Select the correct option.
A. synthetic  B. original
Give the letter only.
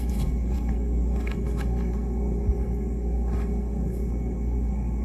A